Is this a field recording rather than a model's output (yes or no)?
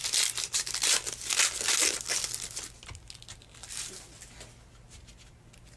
yes